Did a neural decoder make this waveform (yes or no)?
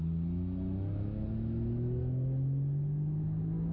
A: no